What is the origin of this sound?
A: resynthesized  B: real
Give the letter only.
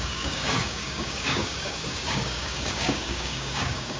A